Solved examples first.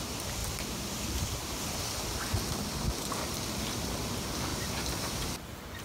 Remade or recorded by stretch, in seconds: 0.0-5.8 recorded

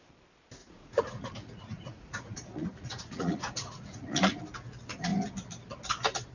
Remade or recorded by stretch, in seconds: 0.0-0.6 recorded; 0.6-4.4 remade; 4.4-6.3 recorded

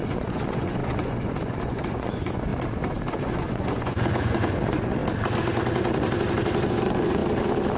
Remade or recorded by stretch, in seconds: 0.0-2.5 remade; 2.5-3.2 recorded; 3.2-5.0 remade; 5.0-6.7 recorded; 6.7-7.2 remade; 7.2-7.8 recorded

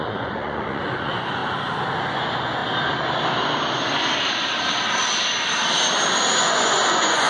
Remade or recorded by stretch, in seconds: 0.0-1.4 remade; 1.4-2.1 recorded; 2.1-2.6 remade; 2.6-6.4 recorded; 6.4-7.3 remade

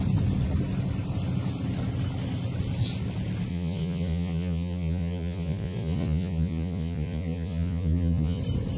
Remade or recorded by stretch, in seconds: 0.0-3.5 recorded; 3.5-8.4 remade; 8.4-8.8 recorded

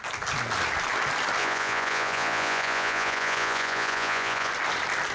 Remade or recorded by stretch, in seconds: 0.0-1.4 recorded; 1.4-4.5 remade; 4.5-5.1 recorded

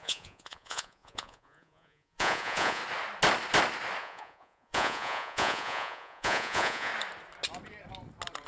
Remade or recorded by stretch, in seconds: 0.0-2.8 remade; 2.8-4.0 recorded; 4.0-6.9 remade; 6.9-8.5 recorded

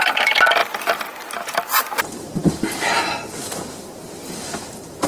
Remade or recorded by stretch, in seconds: 0.0-5.1 recorded